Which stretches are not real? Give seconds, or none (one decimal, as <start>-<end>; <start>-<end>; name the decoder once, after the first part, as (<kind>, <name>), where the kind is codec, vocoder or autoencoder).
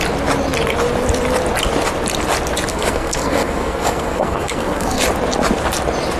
2.7-5.0 (codec, SNAC)